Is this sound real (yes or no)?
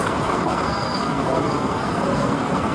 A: no